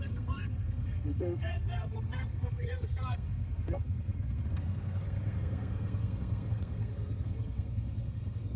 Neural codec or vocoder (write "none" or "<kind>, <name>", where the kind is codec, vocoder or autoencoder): codec, SNAC